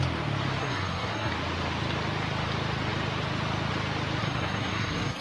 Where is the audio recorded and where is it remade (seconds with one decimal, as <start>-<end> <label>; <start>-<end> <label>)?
0.0-0.6 recorded; 0.6-1.3 remade; 1.3-4.2 recorded; 4.2-5.2 remade

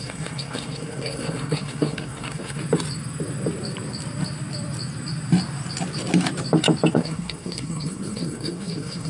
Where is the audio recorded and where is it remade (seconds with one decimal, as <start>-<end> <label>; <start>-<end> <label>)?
0.0-2.6 remade; 2.6-6.9 recorded; 6.9-9.1 remade

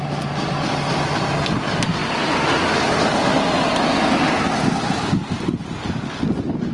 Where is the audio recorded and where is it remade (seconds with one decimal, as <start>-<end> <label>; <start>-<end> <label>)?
0.0-6.7 recorded

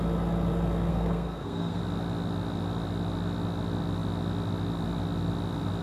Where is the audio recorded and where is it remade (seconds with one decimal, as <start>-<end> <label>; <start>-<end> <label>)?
0.0-0.9 recorded; 0.9-1.8 remade; 1.8-5.8 recorded

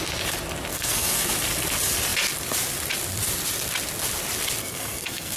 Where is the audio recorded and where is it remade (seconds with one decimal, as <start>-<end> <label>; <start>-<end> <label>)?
0.0-0.7 recorded; 0.7-1.3 remade; 1.3-4.6 recorded; 4.6-5.4 remade

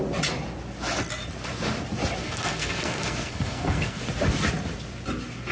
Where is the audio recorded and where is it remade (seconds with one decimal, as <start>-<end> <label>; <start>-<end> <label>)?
0.0-2.2 recorded; 2.2-4.0 remade; 4.0-5.5 recorded